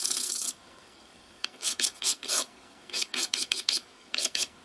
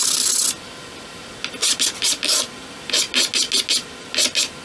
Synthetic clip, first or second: first